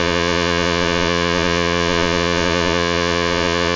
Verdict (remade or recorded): remade